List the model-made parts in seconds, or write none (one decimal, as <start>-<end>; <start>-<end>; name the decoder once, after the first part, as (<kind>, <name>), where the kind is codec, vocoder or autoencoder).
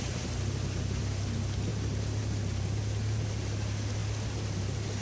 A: none